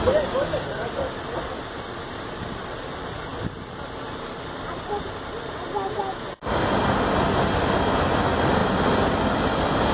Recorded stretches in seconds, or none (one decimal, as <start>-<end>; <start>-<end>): 0.0-9.9